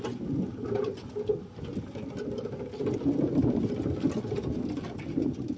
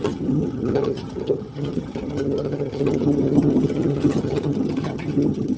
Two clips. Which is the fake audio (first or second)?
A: second